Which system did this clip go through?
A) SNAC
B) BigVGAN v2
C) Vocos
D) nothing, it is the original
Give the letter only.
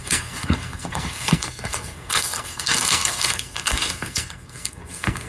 A